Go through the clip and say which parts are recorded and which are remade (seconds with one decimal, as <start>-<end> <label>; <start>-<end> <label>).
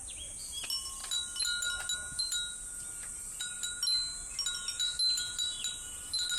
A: 0.0-6.4 recorded